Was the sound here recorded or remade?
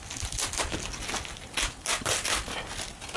recorded